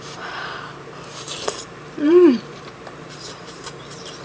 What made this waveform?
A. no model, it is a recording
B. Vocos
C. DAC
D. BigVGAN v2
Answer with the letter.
D